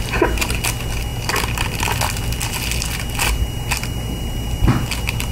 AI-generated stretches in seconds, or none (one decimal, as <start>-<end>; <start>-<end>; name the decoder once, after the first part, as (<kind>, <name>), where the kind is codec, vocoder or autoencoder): none